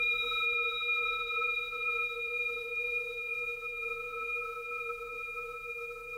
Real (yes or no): no